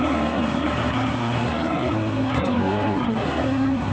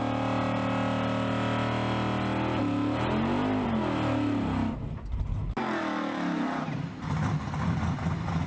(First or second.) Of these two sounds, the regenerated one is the first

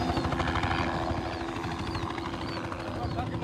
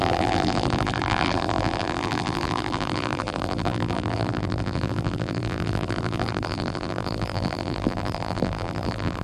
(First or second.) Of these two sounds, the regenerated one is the second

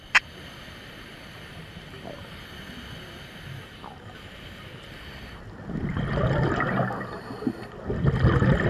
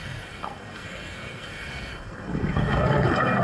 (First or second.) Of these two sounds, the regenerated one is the second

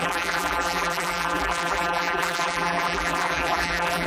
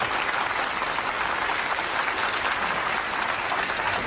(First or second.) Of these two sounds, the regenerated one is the first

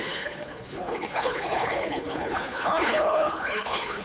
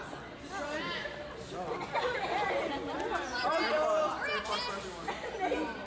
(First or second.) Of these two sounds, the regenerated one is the first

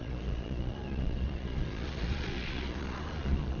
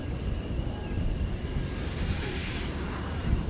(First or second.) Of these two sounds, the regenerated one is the first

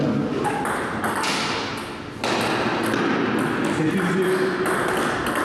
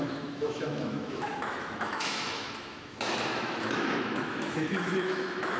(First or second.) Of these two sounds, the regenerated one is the second